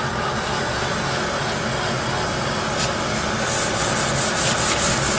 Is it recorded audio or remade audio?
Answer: recorded